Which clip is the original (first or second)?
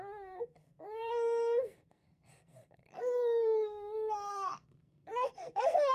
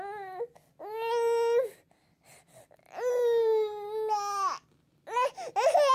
second